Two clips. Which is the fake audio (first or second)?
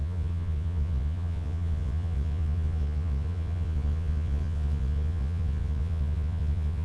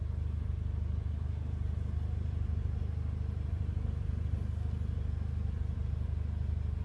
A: first